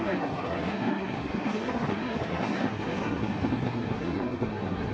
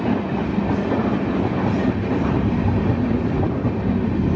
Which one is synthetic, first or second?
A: first